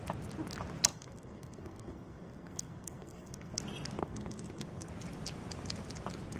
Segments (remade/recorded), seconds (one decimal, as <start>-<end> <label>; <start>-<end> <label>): 0.0-0.9 recorded; 0.9-3.6 remade; 3.6-4.0 recorded; 4.0-4.9 remade; 4.9-6.4 recorded